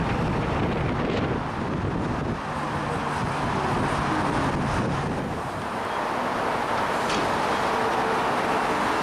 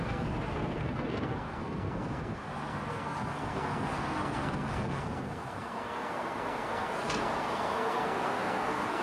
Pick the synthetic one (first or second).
second